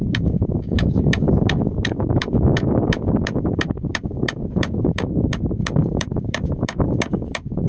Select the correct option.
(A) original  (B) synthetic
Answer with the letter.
B